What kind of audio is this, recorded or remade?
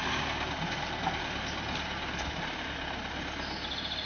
recorded